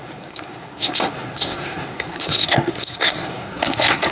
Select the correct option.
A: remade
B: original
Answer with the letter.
A